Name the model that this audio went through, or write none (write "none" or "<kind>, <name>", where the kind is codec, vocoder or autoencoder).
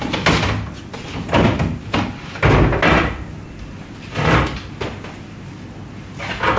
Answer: none